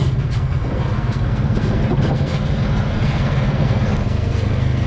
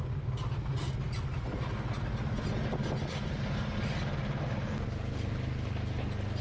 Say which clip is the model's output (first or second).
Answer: first